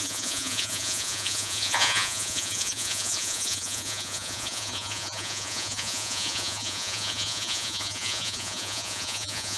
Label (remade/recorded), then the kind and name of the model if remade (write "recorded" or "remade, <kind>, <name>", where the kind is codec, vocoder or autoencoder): remade, vocoder, Vocos